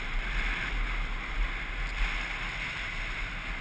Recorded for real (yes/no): yes